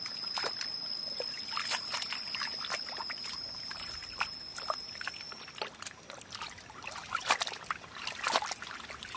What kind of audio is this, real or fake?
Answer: real